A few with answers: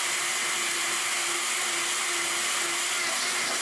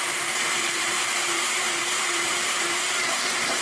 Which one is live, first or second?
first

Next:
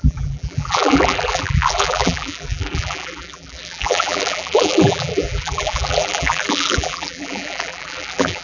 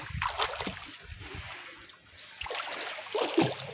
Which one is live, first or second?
second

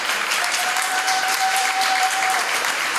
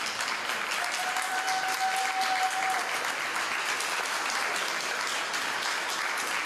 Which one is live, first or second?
second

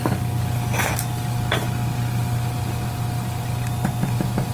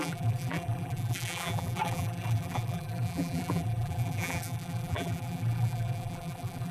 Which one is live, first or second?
first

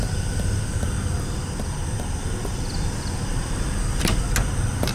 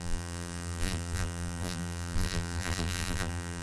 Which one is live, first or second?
first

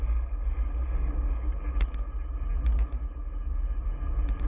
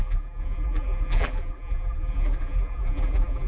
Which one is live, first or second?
first